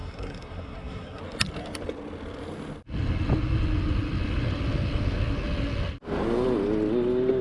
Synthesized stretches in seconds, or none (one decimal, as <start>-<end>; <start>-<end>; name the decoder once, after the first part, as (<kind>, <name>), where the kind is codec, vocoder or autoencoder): 0.0-1.2 (codec, SNAC)